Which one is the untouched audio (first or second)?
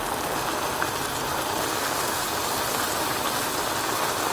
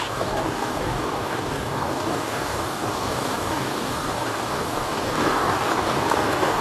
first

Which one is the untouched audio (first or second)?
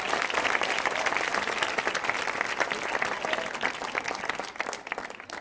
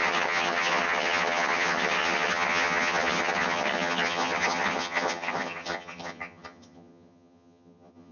first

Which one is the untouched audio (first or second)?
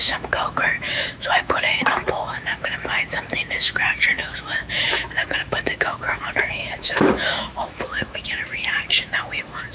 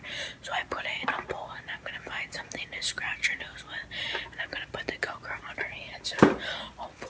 second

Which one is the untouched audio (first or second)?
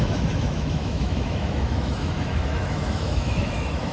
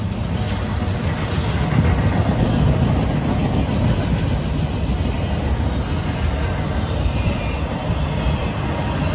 second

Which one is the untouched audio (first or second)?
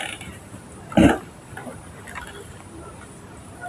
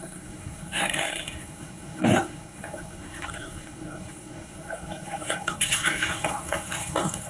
first